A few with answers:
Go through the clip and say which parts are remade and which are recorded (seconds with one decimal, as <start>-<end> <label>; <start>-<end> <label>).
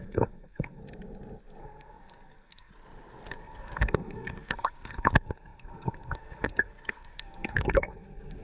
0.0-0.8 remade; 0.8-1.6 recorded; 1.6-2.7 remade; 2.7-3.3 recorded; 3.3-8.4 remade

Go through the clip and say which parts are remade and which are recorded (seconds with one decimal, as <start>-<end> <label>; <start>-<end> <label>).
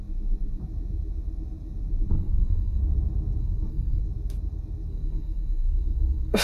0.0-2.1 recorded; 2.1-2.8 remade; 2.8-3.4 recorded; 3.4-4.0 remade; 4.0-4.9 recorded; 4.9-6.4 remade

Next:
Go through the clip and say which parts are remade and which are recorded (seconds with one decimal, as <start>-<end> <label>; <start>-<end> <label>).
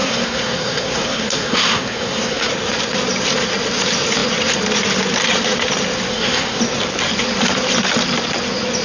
0.0-2.5 remade; 2.5-6.1 recorded; 6.1-6.6 remade; 6.6-8.8 recorded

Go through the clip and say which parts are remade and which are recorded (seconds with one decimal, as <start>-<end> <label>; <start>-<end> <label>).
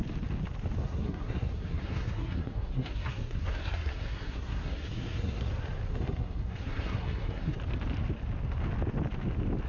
0.0-0.8 recorded; 0.8-5.5 remade; 5.5-5.9 recorded; 5.9-7.6 remade; 7.6-9.7 recorded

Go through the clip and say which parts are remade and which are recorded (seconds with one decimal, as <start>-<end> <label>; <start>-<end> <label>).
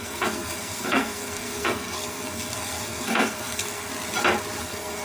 0.0-3.9 remade; 3.9-4.6 recorded; 4.6-5.0 remade